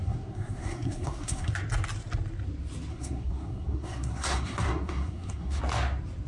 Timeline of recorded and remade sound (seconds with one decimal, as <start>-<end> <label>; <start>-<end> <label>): 0.0-1.5 remade; 1.5-2.9 recorded; 2.9-5.6 remade; 5.6-6.3 recorded

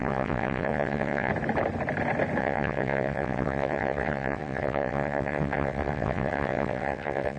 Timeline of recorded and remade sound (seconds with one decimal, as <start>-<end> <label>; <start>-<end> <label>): 0.0-1.3 remade; 1.3-2.4 recorded; 2.4-7.4 remade